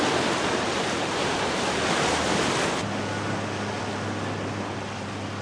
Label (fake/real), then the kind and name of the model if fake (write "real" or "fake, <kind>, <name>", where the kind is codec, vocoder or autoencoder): real